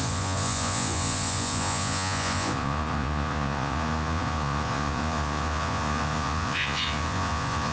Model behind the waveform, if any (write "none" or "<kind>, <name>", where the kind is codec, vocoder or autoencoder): vocoder, Vocos